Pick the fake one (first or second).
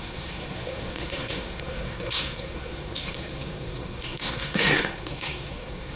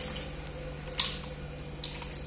first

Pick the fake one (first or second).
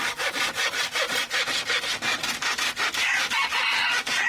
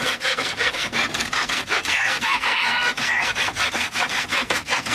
second